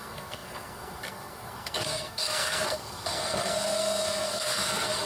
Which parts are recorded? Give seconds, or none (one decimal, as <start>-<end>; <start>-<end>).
none